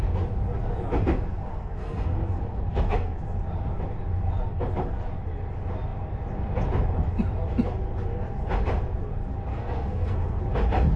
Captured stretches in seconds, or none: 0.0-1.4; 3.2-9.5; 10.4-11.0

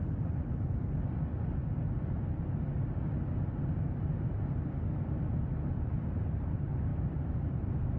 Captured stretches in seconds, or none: 0.0-8.0

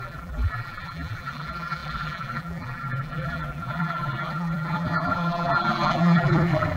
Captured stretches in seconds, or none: none